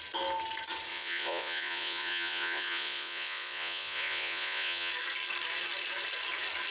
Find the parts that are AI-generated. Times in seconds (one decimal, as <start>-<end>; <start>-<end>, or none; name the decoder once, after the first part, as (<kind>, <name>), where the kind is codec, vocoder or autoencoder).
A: 0.9-4.9 (vocoder, Vocos)